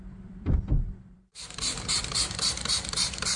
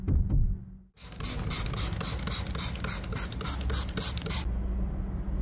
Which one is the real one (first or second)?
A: second